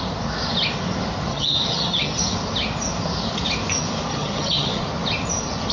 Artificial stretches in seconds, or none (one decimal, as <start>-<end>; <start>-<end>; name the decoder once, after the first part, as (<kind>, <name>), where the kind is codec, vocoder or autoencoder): 1.3-2.2 (vocoder, HiFi-GAN); 4.1-4.8